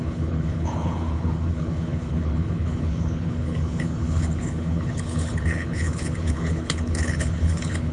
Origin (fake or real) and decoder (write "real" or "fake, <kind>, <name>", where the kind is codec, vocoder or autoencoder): fake, codec, HILCodec